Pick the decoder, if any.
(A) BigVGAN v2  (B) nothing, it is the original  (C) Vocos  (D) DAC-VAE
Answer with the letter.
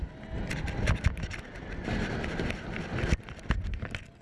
B